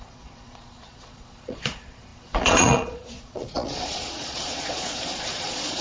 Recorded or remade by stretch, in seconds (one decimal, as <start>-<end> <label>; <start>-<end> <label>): 0.0-5.8 remade